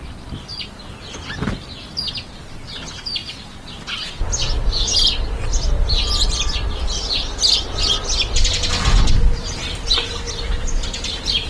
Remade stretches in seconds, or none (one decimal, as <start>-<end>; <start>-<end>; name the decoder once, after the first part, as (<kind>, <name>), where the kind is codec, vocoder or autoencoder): none